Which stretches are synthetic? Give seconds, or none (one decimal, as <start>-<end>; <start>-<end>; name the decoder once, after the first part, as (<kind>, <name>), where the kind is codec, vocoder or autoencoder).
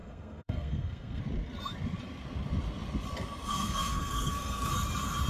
0.0-1.2 (codec, SNAC); 3.5-4.7